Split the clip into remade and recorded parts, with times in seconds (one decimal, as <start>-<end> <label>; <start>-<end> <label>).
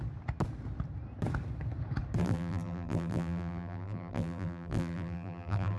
0.0-2.2 recorded; 2.2-5.8 remade